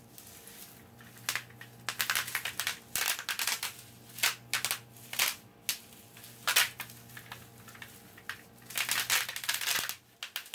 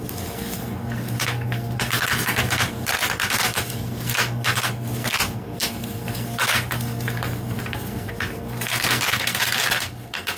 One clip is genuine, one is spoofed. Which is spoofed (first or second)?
second